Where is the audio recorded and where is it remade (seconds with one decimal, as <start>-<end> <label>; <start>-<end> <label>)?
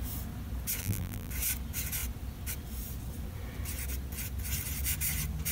0.0-0.8 recorded; 0.8-1.3 remade; 1.3-5.5 recorded